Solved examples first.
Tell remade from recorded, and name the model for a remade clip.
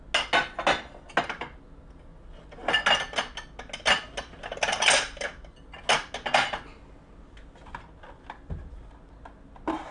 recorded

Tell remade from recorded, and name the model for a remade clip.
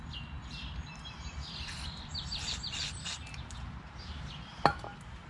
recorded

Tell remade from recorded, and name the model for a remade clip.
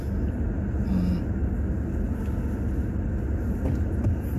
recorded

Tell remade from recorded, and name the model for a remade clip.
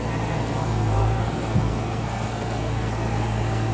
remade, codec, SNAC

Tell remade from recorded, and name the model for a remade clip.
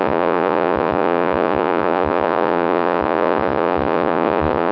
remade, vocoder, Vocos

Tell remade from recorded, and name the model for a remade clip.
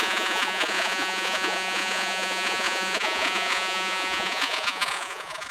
remade, vocoder, Vocos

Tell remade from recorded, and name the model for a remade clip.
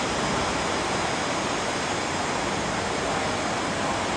recorded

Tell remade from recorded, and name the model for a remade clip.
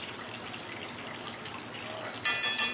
recorded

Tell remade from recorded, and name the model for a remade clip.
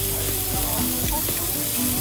recorded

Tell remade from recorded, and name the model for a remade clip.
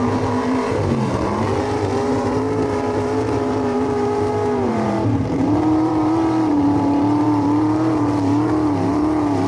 remade, vocoder, BigVGAN v2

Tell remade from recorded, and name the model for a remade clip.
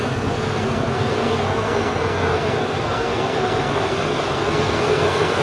remade, codec, SNAC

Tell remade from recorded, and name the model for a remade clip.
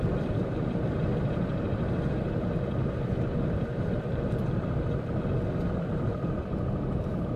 recorded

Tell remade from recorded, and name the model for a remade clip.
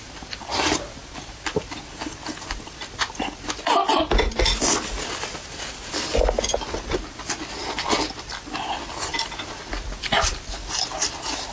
recorded